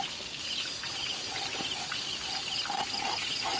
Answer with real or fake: real